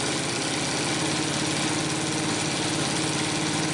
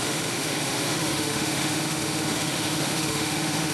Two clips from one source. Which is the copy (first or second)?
second